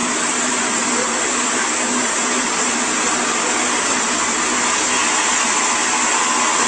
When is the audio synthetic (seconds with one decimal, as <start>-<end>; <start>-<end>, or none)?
none